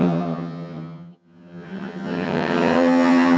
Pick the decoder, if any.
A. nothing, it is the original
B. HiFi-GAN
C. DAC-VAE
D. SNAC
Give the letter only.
B